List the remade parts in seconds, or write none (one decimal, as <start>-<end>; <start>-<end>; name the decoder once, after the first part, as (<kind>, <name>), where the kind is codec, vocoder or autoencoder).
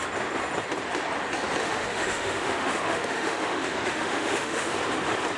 1.6-4.8 (autoencoder, DAC-VAE)